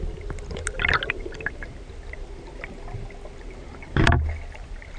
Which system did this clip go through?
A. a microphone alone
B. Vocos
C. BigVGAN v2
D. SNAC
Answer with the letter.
A